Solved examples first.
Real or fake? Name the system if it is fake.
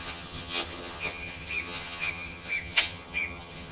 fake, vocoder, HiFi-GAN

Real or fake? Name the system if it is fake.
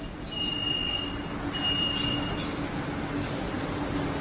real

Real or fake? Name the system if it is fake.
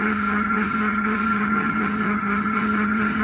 fake, vocoder, HiFi-GAN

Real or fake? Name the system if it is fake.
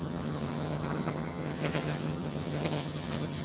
fake, vocoder, HiFi-GAN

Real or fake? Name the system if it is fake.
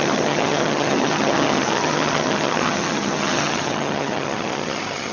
fake, vocoder, HiFi-GAN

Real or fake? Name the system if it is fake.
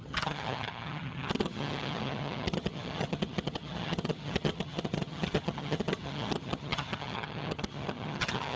fake, vocoder, HiFi-GAN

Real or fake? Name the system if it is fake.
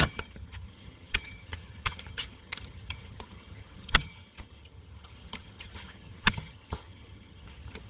fake, vocoder, HiFi-GAN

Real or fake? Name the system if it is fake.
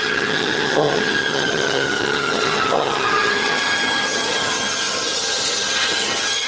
fake, vocoder, HiFi-GAN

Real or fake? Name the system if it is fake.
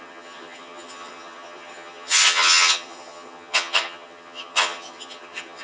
fake, vocoder, HiFi-GAN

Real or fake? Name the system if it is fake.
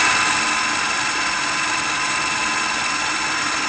real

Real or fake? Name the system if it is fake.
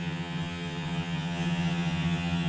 fake, vocoder, HiFi-GAN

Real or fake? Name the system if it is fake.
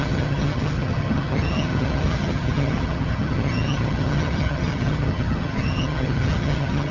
fake, vocoder, HiFi-GAN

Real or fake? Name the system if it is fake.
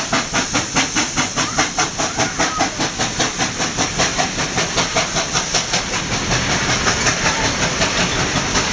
real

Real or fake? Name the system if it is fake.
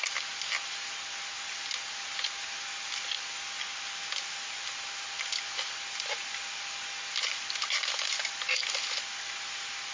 real